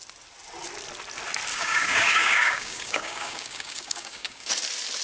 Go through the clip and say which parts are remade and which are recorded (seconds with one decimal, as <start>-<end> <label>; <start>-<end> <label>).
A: 0.0-1.5 recorded; 1.5-4.5 remade; 4.5-5.0 recorded